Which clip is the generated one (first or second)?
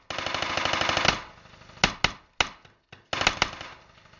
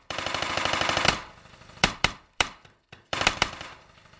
second